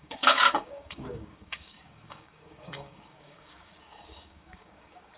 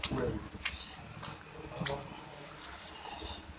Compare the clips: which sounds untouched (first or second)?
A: second